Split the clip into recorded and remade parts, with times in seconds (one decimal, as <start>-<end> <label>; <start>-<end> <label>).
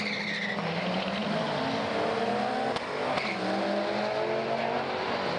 0.0-5.4 recorded